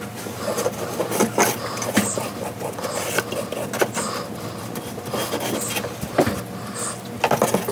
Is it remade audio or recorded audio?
recorded